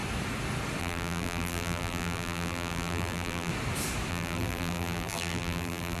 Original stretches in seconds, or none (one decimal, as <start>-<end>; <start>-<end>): 0.0-0.8; 3.5-4.1